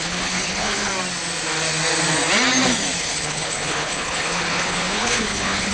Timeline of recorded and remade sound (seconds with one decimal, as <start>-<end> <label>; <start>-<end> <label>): 0.0-0.9 remade; 0.9-3.0 recorded; 3.0-5.7 remade